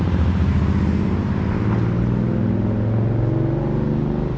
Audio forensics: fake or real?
real